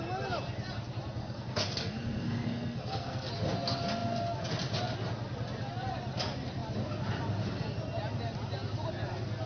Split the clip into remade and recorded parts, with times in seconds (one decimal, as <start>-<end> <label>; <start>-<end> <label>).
0.0-1.2 recorded; 1.2-3.3 remade; 3.3-9.5 recorded